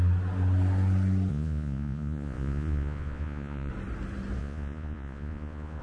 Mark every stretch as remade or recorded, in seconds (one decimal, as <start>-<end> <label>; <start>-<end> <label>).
0.0-1.3 recorded; 1.3-3.7 remade; 3.7-4.4 recorded; 4.4-5.8 remade